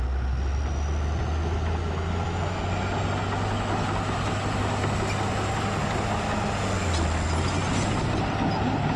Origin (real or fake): real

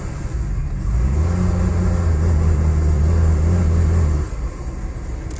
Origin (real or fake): real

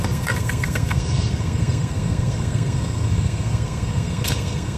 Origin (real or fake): fake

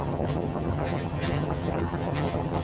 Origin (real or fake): fake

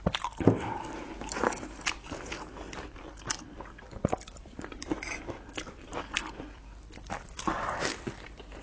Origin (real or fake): fake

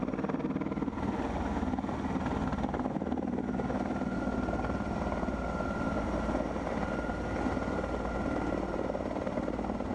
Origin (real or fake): real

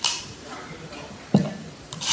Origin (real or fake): real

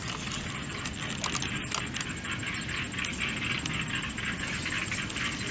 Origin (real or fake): real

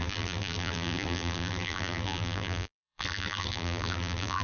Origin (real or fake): fake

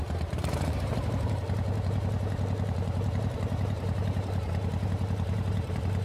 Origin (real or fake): fake